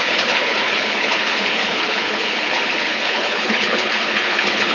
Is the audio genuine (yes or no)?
no